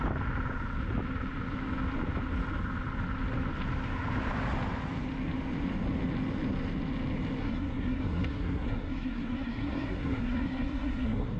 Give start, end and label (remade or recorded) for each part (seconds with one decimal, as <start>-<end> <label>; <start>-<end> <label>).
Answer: 0.0-7.4 recorded; 7.4-11.4 remade